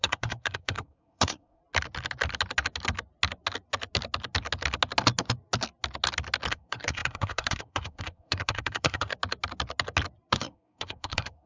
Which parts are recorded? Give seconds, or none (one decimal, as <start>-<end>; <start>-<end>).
1.6-6.5; 9.1-10.3